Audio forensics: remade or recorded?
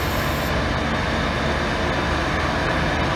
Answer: recorded